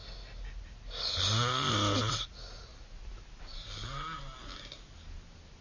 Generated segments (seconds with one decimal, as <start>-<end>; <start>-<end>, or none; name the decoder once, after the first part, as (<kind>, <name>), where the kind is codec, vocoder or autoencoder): none